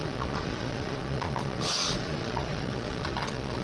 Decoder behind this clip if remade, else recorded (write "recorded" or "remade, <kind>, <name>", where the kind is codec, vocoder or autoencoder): remade, vocoder, Vocos